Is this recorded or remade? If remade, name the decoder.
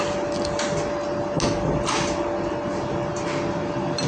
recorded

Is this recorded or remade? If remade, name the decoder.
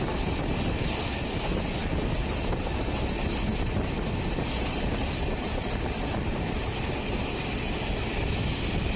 recorded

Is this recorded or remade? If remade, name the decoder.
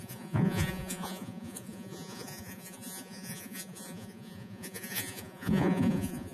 remade, vocoder, Vocos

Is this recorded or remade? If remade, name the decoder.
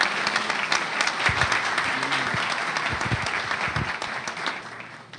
recorded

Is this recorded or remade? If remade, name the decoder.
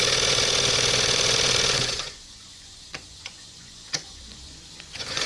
remade, vocoder, Vocos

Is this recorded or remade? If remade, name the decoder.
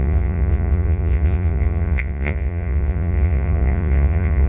remade, vocoder, Vocos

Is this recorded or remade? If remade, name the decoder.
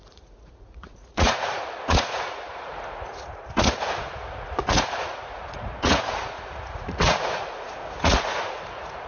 remade, vocoder, Vocos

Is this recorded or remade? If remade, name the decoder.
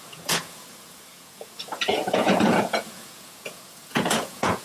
remade, vocoder, Vocos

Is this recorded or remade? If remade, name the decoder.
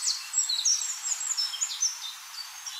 recorded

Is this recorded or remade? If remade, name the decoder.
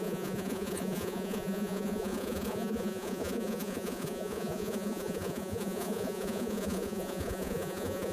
remade, vocoder, Vocos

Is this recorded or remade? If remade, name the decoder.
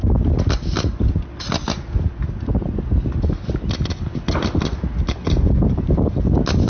recorded